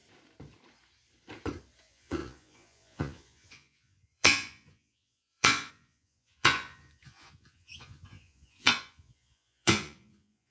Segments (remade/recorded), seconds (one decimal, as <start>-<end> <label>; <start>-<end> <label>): 0.0-1.8 recorded; 1.8-10.5 remade